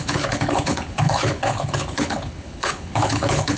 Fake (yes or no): yes